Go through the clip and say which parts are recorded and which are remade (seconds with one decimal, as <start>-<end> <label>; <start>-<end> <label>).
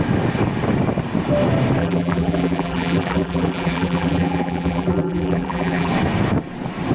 0.0-1.8 recorded; 1.8-5.9 remade; 5.9-6.9 recorded